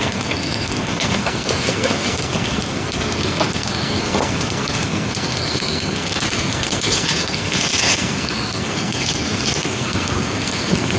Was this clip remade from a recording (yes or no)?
yes